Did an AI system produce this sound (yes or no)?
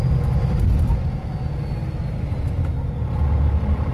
no